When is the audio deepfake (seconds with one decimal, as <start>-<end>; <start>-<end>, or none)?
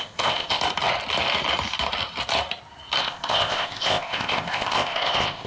0.0-0.6; 3.0-5.5